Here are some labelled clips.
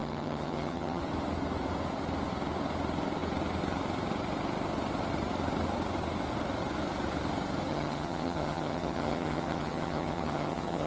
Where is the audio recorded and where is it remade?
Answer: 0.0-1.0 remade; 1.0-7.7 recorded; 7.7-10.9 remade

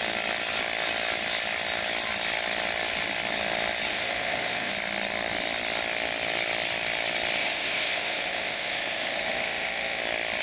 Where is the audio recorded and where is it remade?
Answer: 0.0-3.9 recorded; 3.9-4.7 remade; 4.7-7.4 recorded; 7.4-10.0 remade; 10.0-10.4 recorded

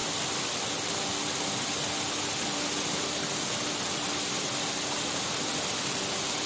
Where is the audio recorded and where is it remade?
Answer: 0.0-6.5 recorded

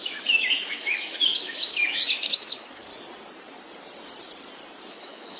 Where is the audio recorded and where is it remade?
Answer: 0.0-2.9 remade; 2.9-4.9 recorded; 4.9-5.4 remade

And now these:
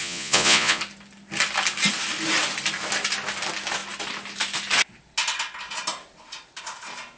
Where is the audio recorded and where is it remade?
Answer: 0.0-0.8 remade; 0.8-7.2 recorded

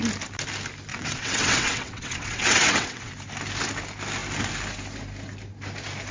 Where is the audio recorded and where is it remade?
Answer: 0.0-0.9 recorded; 0.9-3.1 remade; 3.1-6.1 recorded

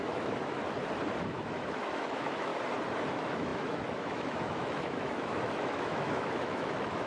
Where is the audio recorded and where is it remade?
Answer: 0.0-0.6 remade; 0.6-1.2 recorded; 1.2-2.5 remade; 2.5-3.1 recorded; 3.1-7.1 remade